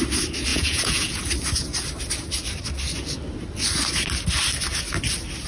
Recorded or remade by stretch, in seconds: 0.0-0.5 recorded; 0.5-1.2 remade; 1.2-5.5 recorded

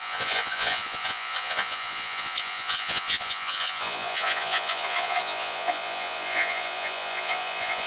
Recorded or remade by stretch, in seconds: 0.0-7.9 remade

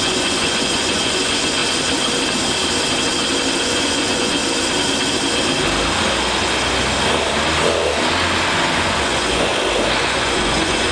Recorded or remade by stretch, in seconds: 0.0-1.6 remade; 1.6-3.6 recorded; 3.6-4.4 remade; 4.4-8.5 recorded; 8.5-9.5 remade; 9.5-10.0 recorded; 10.0-10.9 remade

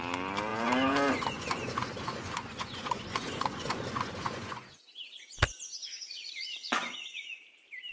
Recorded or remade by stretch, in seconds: 0.0-0.5 recorded; 0.5-4.8 remade; 4.8-5.8 recorded; 5.8-7.4 remade; 7.4-7.9 recorded